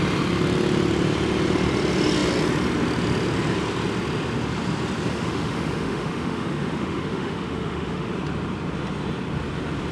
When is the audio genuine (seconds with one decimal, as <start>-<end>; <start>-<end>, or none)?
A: 0.0-5.1; 8.1-9.9